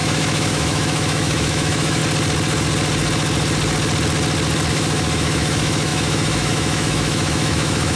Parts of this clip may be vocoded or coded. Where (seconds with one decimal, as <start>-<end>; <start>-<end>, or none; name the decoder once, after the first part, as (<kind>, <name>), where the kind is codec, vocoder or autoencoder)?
0.0-2.0 (autoencoder, DAC-VAE); 4.7-8.0